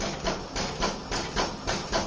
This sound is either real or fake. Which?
real